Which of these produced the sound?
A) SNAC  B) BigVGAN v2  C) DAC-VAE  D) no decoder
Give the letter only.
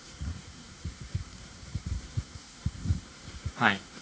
A